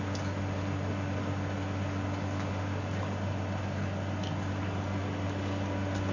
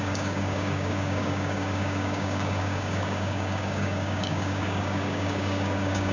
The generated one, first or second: second